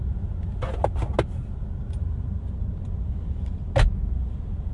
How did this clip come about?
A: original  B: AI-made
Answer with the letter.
A